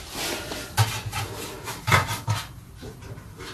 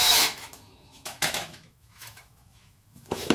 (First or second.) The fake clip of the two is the second